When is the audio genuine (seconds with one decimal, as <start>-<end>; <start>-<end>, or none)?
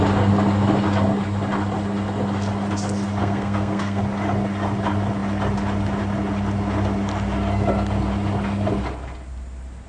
0.0-3.2; 4.0-9.9